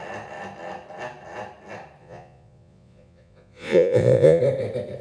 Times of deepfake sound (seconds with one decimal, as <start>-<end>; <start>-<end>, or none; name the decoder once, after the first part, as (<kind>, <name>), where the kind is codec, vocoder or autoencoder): 2.0-4.4 (vocoder, Vocos)